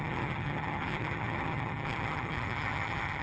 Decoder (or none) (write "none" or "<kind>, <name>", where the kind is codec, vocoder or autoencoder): vocoder, HiFi-GAN